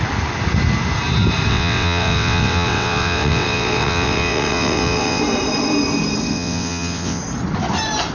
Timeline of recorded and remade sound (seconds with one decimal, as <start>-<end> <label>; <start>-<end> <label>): 0.0-1.5 recorded; 1.5-5.2 remade; 5.2-6.3 recorded; 6.3-7.2 remade; 7.2-8.1 recorded